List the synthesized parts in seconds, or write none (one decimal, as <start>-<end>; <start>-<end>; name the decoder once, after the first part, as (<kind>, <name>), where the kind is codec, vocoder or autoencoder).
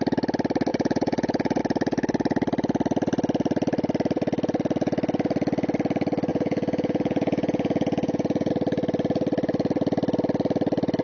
0.7-1.6 (vocoder, Vocos); 6.3-8.5